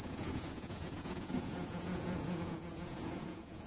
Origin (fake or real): fake